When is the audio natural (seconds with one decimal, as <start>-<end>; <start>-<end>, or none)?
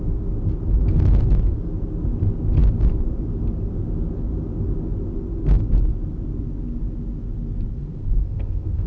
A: 0.0-7.8